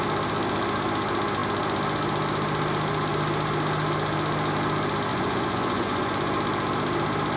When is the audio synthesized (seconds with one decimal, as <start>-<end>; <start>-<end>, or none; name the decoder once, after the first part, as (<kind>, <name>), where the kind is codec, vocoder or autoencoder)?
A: 5.1-6.1 (vocoder, Vocos)

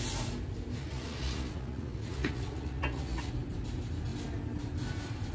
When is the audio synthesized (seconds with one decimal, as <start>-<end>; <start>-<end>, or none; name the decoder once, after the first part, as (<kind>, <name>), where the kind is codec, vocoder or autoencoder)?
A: 0.8-3.3 (vocoder, Vocos)